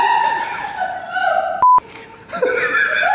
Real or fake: real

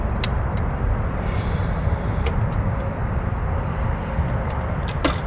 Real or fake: fake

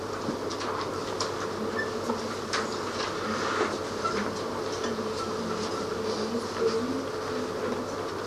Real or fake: real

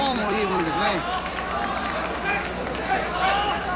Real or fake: fake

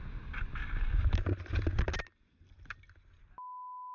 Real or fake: real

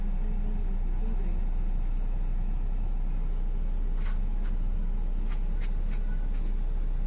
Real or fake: real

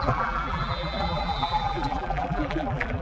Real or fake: fake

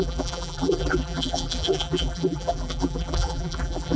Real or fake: fake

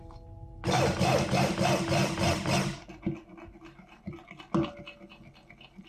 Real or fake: real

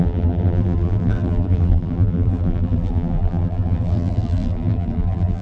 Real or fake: fake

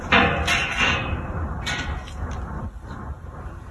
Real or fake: fake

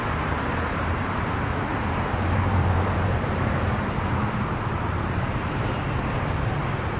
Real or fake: fake